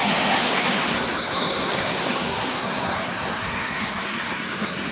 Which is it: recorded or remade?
remade